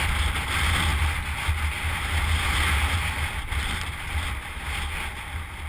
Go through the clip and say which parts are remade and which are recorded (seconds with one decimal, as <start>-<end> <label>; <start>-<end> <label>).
0.0-5.7 recorded